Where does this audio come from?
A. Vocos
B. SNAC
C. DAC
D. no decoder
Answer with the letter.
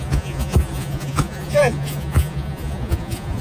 A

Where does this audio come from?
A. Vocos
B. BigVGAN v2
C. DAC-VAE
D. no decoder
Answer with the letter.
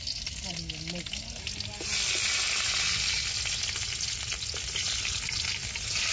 D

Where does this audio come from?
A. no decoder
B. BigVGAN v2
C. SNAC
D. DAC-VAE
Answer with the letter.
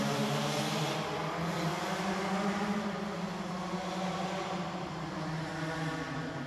A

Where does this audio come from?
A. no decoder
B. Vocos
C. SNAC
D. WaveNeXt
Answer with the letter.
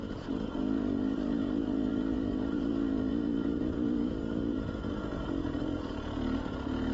B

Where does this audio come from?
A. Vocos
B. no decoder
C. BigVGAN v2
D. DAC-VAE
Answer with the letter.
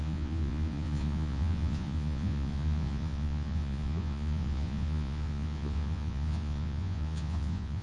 A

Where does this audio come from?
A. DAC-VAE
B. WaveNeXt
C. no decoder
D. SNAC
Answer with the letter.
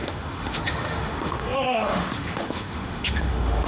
A